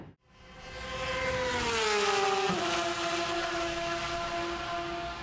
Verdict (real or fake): real